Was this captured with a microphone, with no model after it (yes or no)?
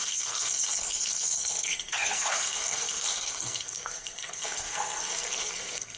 no